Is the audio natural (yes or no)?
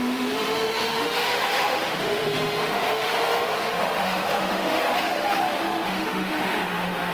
no